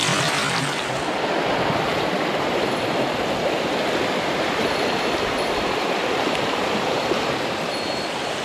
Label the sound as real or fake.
fake